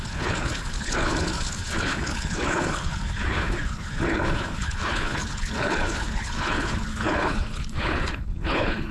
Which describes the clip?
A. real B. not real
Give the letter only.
B